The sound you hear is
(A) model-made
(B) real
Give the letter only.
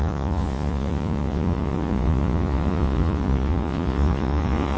A